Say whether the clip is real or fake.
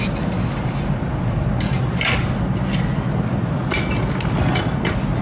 real